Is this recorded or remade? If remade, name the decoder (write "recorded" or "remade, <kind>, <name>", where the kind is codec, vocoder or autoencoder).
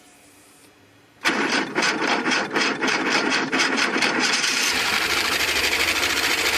remade, vocoder, BigVGAN v2